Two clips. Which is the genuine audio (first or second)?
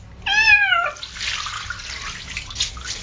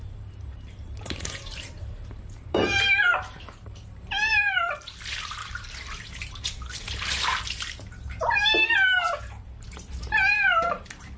first